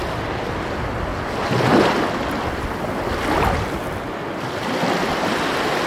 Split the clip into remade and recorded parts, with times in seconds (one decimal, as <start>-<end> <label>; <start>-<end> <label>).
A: 0.0-5.9 recorded